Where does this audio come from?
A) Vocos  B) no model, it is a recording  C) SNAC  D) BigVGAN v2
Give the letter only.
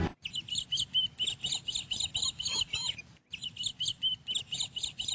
B